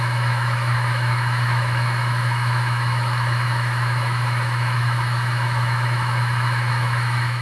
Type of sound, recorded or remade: remade